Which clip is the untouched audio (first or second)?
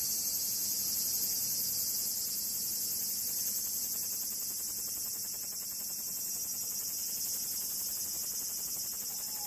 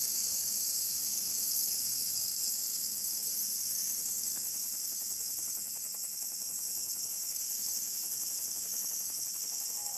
first